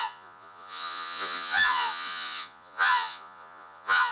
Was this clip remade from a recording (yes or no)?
yes